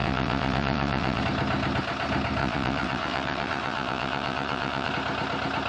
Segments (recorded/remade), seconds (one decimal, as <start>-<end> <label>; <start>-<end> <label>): 0.0-1.2 remade; 1.2-2.4 recorded; 2.4-4.9 remade; 4.9-5.7 recorded